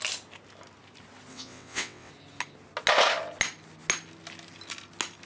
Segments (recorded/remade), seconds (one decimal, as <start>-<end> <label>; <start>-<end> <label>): 0.0-1.3 recorded; 1.3-2.1 remade; 2.1-5.3 recorded